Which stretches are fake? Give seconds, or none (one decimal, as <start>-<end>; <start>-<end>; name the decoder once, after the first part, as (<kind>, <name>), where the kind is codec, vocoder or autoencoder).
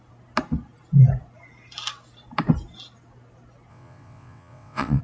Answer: 3.7-5.0 (vocoder, WaveNeXt)